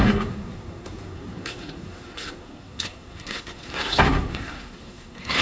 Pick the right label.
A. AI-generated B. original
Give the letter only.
A